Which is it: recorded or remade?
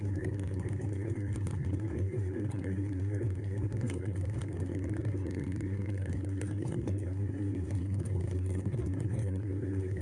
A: remade